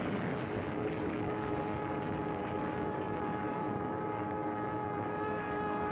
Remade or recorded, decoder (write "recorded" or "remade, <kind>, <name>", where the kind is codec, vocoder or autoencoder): remade, codec, DAC